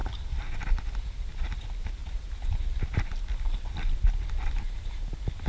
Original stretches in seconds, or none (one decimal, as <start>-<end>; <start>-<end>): 0.0-5.5